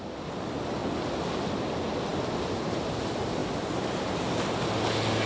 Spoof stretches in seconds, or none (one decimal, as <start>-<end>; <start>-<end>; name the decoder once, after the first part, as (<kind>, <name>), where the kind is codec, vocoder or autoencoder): 2.1-3.0 (vocoder, BigVGAN v2)

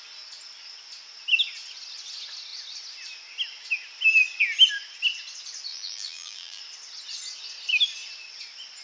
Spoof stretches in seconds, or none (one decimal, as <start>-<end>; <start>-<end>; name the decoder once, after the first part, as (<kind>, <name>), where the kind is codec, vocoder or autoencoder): 5.7-6.6 (vocoder, BigVGAN v2)

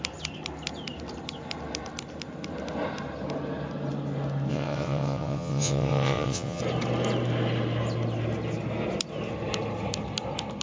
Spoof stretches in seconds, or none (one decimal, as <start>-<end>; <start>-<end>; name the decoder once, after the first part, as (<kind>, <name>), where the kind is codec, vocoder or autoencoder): 4.5-6.6 (vocoder, WaveNeXt)

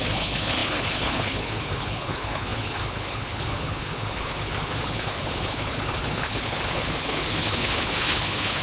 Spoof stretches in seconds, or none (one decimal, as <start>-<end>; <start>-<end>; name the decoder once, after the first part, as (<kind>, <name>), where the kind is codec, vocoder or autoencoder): 0.0-8.6 (codec, HILCodec)

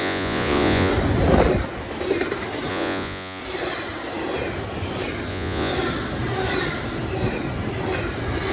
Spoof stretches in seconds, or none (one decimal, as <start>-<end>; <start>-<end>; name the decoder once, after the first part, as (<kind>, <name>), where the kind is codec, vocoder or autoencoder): 0.0-0.9 (vocoder, Vocos); 2.7-3.4; 5.3-5.7

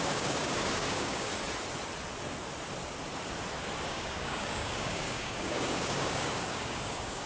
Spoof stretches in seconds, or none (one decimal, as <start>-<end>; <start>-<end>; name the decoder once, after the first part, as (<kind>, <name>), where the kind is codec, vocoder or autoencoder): 0.0-1.3 (codec, DAC); 3.9-7.3

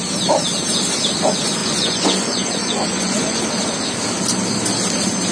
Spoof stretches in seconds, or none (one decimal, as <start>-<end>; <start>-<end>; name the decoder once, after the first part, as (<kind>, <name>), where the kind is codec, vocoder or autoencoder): 1.6-3.4 (vocoder, Vocos)